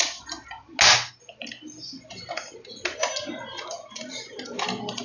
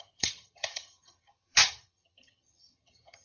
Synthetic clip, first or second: second